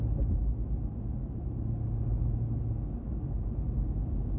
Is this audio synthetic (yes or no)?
no